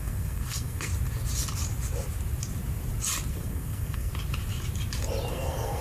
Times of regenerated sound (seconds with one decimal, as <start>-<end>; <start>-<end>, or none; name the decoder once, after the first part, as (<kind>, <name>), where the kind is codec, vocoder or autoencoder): 0.0-0.9 (codec, SNAC); 3.3-4.1; 5.3-5.8